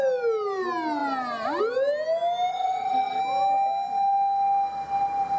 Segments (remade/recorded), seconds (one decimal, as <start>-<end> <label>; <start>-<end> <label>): 0.0-2.5 recorded; 2.5-3.2 remade; 3.2-5.4 recorded